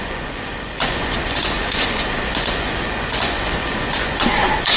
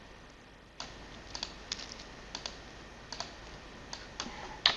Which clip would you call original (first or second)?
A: second